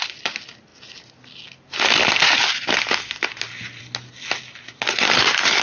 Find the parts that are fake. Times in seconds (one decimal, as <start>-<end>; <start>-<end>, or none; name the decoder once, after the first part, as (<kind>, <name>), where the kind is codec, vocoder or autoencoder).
none